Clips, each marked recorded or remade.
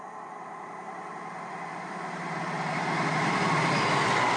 remade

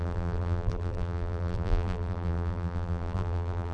remade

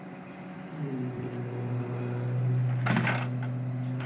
recorded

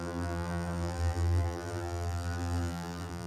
remade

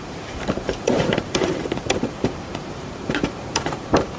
remade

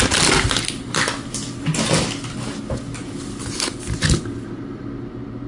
recorded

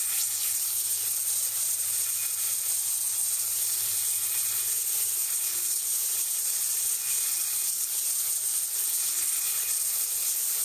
recorded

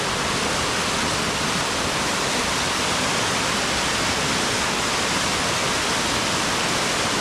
recorded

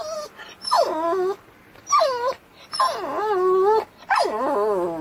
recorded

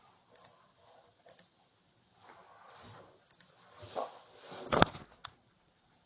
recorded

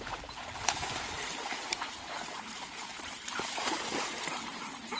remade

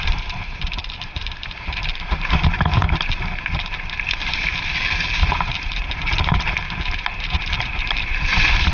remade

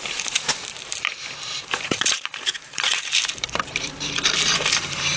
remade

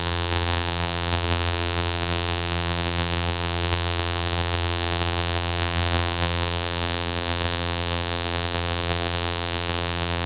remade